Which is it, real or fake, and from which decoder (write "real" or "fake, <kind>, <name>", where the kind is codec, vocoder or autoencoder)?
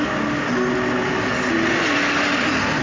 real